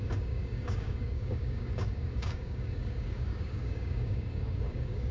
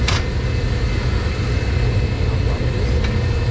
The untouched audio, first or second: second